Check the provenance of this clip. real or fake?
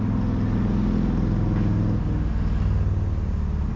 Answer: real